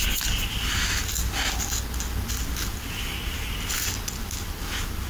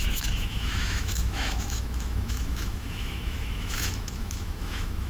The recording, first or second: first